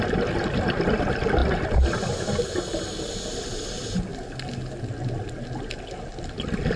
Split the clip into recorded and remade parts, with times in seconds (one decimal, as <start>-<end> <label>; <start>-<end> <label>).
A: 0.0-6.8 recorded